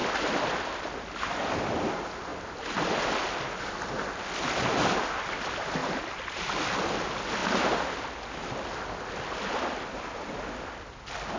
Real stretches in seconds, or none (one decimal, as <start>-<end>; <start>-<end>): 0.0-11.4